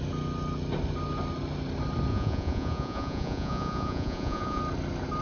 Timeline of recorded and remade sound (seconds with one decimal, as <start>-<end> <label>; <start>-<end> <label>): 0.0-2.1 recorded; 2.1-4.6 remade; 4.6-5.2 recorded